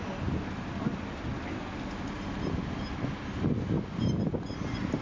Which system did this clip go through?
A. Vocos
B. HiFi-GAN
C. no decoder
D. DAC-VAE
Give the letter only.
C